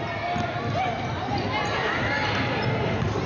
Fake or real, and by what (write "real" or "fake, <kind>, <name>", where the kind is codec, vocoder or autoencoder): real